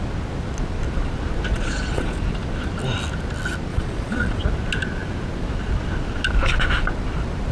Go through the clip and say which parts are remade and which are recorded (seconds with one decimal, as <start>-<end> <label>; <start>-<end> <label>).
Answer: 0.0-1.5 recorded; 1.5-2.2 remade; 2.2-3.7 recorded; 3.7-4.4 remade; 4.4-7.5 recorded